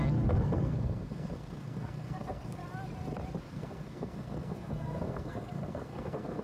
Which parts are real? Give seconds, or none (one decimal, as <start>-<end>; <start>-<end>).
2.6-3.4